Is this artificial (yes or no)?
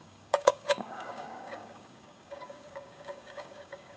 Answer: yes